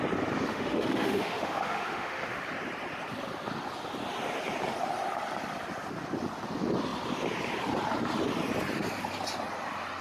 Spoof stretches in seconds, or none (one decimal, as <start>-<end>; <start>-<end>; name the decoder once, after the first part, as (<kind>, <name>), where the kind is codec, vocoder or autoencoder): 0.5-2.4 (autoencoder, DAC-VAE)